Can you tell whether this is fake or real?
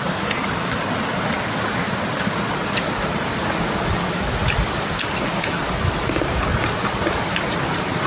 real